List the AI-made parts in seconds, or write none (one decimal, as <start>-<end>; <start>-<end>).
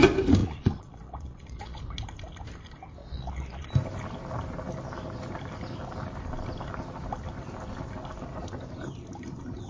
0.4-1.8; 3.0-3.7